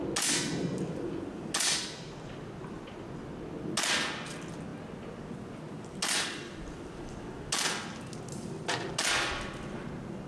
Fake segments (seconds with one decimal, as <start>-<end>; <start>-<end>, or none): none